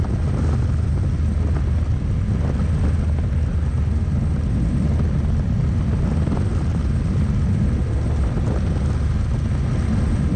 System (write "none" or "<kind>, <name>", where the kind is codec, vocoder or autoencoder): none